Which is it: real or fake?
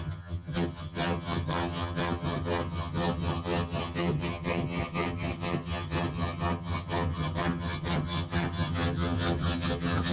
fake